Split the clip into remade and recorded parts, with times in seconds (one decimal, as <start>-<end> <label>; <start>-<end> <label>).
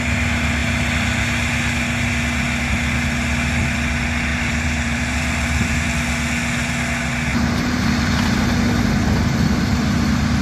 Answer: 0.0-4.3 recorded; 4.3-5.9 remade; 5.9-7.3 recorded; 7.3-7.9 remade; 7.9-10.4 recorded